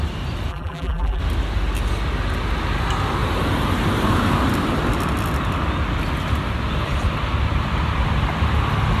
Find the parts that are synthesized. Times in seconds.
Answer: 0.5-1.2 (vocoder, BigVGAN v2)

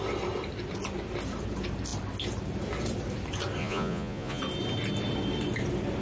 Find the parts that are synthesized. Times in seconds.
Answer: 3.6-4.4 (vocoder, Vocos)

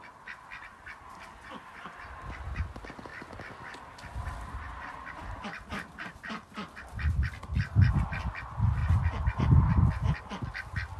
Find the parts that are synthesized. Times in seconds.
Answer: 3.1-7.9 (vocoder, BigVGAN v2)

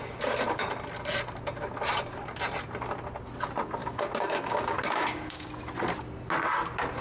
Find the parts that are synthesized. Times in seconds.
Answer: 3.8-5.5 (codec, DAC)

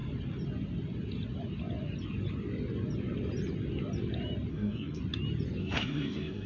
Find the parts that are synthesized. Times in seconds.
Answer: 4.5-5.0 (codec, SNAC); 5.6-6.5

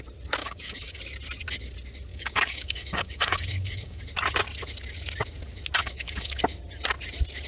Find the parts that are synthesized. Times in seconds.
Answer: 0.4-1.0 (codec, DAC); 2.1-4.0; 5.8-6.4

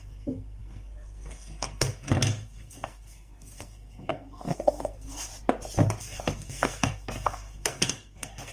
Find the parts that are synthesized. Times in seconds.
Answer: 0.0-5.3 (codec, SNAC); 6.0-8.5